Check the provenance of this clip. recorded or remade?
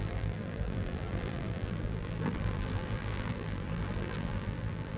remade